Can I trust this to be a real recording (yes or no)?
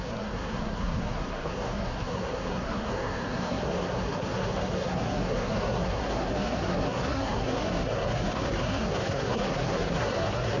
no